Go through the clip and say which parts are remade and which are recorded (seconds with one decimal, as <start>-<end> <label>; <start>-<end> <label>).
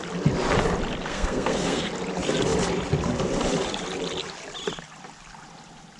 0.0-1.1 recorded; 1.1-1.9 remade; 1.9-6.0 recorded